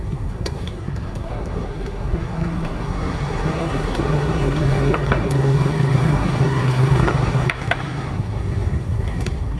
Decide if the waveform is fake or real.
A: fake